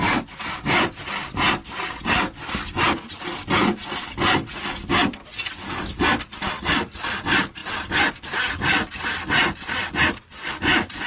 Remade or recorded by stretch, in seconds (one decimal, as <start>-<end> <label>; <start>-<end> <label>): 0.0-11.1 recorded